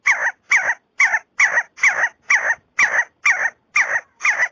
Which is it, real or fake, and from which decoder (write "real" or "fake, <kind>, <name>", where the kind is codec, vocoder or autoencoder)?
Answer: real